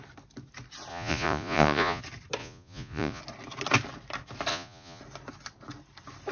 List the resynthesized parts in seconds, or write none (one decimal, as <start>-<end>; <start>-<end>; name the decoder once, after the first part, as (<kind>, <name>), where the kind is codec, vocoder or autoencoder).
0.9-2.0 (vocoder, Vocos); 2.4-3.2; 4.5-5.0